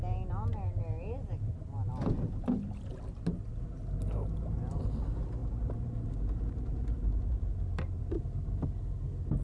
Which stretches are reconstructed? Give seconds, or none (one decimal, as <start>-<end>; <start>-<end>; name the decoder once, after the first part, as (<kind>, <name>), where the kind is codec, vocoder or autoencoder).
5.4-8.2 (vocoder, BigVGAN v2)